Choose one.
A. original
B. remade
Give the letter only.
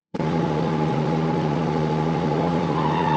B